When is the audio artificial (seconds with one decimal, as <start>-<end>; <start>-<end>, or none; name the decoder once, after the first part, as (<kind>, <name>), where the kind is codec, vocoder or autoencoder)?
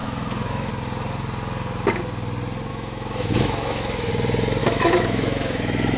0.0-0.7 (autoencoder, DAC-VAE); 2.7-4.1; 4.6-6.0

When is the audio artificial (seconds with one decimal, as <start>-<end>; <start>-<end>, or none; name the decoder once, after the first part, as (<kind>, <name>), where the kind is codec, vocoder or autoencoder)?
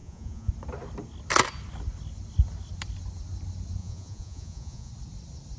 0.0-0.5 (vocoder, Vocos); 3.8-4.9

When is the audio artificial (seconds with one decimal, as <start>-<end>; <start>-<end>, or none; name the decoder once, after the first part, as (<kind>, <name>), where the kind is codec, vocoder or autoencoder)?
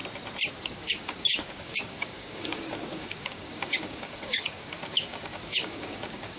0.5-6.4 (codec, DAC)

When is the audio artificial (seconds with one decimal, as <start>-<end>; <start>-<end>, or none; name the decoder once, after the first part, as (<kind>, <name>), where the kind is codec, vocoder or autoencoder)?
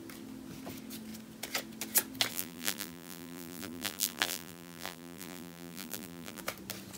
2.3-6.4 (vocoder, BigVGAN v2)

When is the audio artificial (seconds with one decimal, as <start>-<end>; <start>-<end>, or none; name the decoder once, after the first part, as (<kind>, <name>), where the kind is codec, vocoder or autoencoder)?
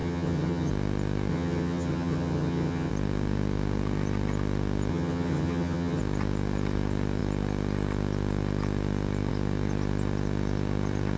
0.0-0.7 (vocoder, HiFi-GAN); 1.3-2.9; 4.9-6.0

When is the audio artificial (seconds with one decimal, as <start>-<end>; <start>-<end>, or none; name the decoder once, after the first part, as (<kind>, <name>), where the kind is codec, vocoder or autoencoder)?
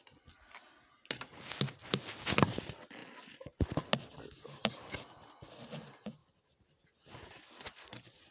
none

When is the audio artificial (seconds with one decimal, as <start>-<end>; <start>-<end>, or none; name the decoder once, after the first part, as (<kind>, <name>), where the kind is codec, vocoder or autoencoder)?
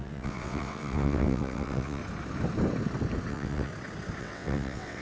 0.0-2.0 (vocoder, WaveNeXt); 3.3-3.7; 4.2-5.0